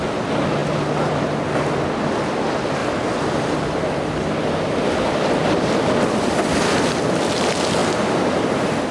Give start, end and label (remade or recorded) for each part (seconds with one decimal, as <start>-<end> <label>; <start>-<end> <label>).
0.0-2.8 recorded; 2.8-5.7 remade; 5.7-7.8 recorded; 7.8-8.9 remade